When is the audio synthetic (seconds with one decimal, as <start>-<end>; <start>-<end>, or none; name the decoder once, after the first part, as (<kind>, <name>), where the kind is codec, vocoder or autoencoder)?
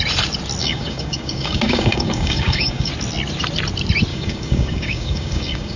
0.6-2.9 (codec, DAC); 4.1-5.8